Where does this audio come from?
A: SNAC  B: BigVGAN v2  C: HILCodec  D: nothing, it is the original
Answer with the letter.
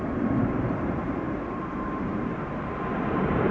B